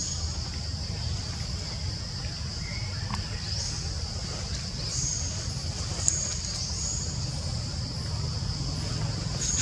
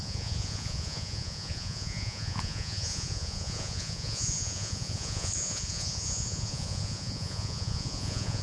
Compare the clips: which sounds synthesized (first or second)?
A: second